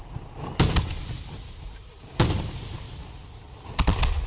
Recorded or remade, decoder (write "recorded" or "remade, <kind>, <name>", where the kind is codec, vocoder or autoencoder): recorded